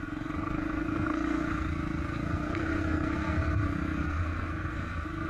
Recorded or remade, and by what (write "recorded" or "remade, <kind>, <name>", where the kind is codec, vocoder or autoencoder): remade, codec, SNAC